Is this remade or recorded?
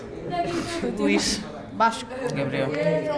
recorded